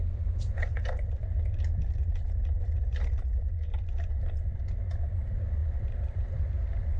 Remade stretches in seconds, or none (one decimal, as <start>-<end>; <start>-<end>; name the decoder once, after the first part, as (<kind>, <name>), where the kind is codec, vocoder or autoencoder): 5.6-6.4 (vocoder, BigVGAN v2)